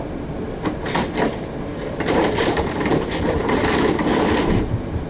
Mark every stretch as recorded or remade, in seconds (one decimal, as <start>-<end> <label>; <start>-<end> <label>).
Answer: 0.0-5.1 remade